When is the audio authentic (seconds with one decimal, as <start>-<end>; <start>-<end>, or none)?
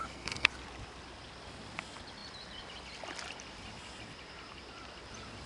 0.5-5.5